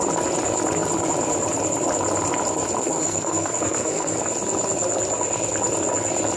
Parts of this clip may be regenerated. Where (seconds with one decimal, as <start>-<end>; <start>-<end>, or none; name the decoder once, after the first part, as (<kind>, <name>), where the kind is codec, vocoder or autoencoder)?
2.8-4.2 (codec, SNAC)